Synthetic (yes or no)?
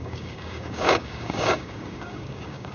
yes